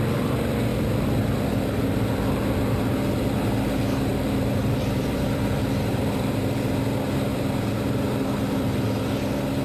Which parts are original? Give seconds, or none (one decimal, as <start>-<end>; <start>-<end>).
0.0-4.1; 6.8-7.3; 9.1-9.6